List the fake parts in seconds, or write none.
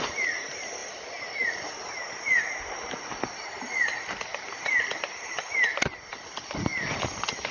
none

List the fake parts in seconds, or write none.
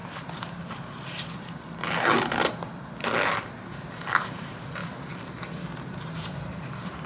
4.3-4.8 (vocoder, BigVGAN v2); 5.9-7.1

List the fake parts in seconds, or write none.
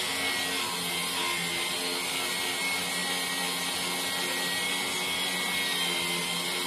none